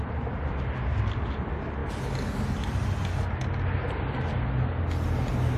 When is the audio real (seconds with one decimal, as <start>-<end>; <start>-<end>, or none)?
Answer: 0.0-5.6